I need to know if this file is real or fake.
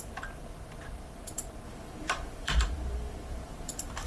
fake